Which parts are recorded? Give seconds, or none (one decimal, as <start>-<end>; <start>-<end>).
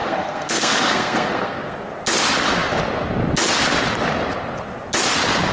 1.9-5.5